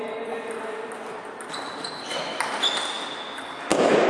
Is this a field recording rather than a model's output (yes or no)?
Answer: yes